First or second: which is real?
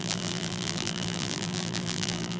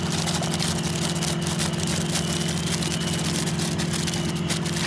second